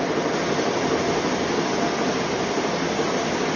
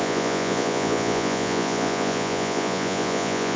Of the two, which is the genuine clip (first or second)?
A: first